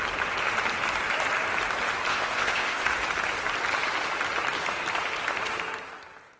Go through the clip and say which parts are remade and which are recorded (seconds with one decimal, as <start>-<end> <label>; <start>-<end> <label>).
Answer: 0.0-2.1 recorded; 2.1-2.9 remade; 2.9-6.4 recorded